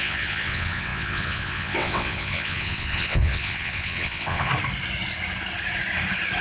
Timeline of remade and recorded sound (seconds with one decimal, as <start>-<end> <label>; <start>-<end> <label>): 0.0-4.5 remade; 4.5-6.4 recorded